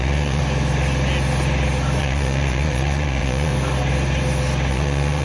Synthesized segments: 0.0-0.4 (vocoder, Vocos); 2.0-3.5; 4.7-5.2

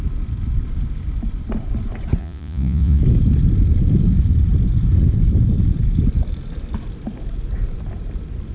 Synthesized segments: 2.2-3.0 (vocoder, Vocos)

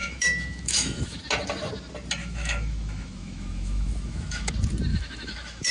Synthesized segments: 0.0-1.2 (autoencoder, DAC-VAE); 2.2-4.5; 4.9-5.7

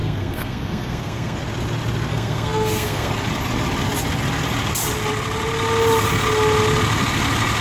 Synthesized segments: 0.0-1.4 (codec, SNAC); 2.1-3.1

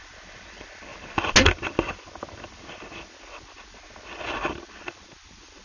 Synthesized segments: none

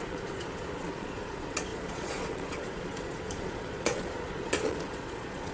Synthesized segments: 0.0-5.5 (vocoder, Vocos)

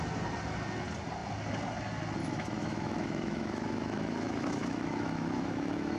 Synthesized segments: 2.2-6.0 (autoencoder, DAC-VAE)

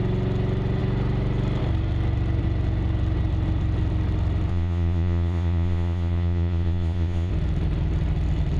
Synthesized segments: 4.5-7.3 (vocoder, Vocos)